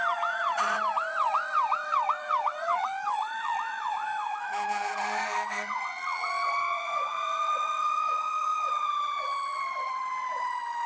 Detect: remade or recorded remade